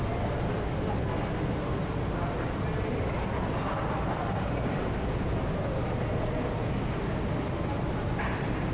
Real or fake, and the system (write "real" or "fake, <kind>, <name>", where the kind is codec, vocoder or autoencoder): real